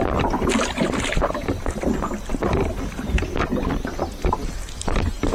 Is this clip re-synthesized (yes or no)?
no